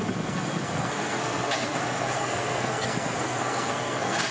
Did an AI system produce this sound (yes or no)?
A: yes